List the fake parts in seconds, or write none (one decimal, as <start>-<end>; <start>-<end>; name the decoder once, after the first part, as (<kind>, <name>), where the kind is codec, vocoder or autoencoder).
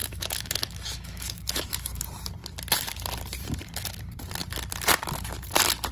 0.0-2.0 (autoencoder, DAC-VAE)